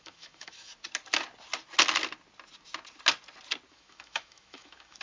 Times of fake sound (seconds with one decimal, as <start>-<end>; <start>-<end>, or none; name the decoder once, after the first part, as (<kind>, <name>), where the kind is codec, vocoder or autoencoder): 0.0-0.7 (autoencoder, DAC-VAE); 3.7-5.0